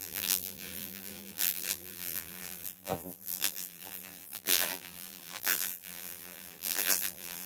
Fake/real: fake